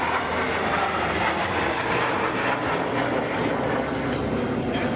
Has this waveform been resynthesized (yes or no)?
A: no